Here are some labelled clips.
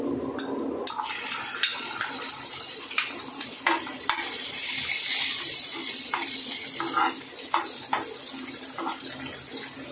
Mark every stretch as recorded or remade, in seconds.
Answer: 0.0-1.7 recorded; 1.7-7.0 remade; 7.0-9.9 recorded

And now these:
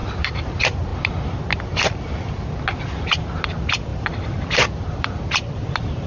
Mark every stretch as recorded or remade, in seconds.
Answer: 0.0-0.5 remade; 0.5-0.9 recorded; 0.9-2.4 remade; 2.4-3.9 recorded; 3.9-6.1 remade

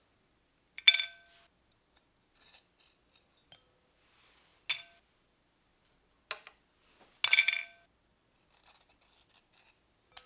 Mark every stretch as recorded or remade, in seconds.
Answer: 0.0-10.3 recorded